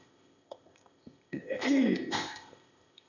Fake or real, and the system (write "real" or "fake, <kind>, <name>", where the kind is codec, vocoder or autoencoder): fake, codec, ZipCodec